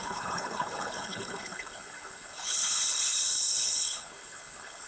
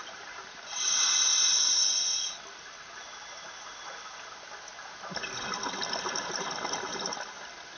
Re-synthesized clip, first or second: first